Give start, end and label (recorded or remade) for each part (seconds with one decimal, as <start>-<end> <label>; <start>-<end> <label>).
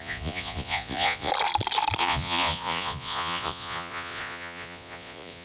0.0-1.3 remade; 1.3-2.0 recorded; 2.0-5.4 remade